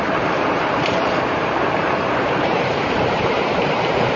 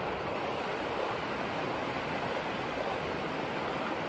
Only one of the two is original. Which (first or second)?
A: second